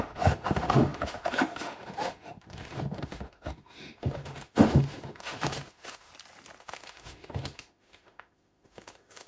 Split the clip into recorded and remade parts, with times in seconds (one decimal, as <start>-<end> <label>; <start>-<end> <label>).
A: 0.0-6.1 remade; 6.1-6.6 recorded; 6.6-9.3 remade